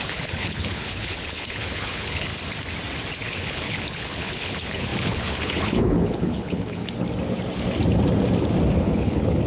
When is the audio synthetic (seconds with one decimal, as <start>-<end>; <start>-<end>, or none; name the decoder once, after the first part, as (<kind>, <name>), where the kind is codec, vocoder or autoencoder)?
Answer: 0.0-2.3 (codec, HILCodec); 3.2-6.8; 8.8-9.5